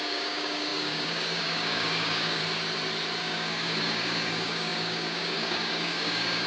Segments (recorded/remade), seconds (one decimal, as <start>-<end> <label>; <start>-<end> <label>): 0.0-2.4 remade; 2.4-3.2 recorded; 3.2-6.5 remade